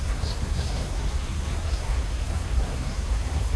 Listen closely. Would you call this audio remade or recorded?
remade